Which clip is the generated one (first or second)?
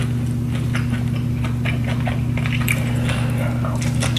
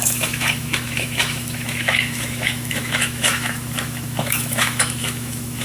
second